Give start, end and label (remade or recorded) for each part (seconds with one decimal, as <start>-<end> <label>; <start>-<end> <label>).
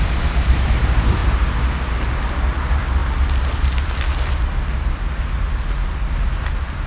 0.0-1.2 remade; 1.2-2.6 recorded; 2.6-3.0 remade; 3.0-6.5 recorded; 6.5-6.9 remade